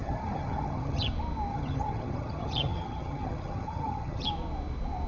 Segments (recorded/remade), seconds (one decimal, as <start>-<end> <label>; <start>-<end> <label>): 0.0-1.1 remade; 1.1-1.5 recorded; 1.5-4.3 remade; 4.3-5.1 recorded